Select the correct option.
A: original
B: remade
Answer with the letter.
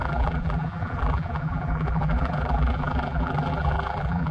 B